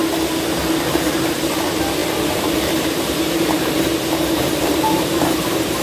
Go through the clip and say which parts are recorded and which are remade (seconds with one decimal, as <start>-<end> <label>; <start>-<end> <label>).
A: 0.0-0.9 recorded; 0.9-5.8 remade